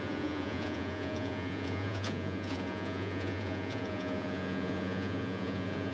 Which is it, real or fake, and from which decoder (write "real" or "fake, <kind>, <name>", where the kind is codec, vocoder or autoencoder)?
fake, vocoder, Vocos